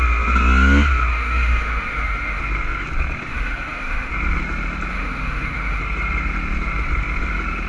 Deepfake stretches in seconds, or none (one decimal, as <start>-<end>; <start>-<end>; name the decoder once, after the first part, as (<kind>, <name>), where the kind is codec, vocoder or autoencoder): 1.1-2.4 (autoencoder, DAC-VAE); 3.3-4.1; 4.9-5.8